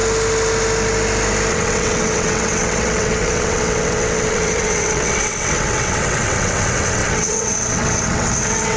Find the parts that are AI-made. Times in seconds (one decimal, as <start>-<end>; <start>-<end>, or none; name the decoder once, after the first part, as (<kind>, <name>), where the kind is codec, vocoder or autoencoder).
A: 1.5-8.8 (vocoder, WaveNeXt)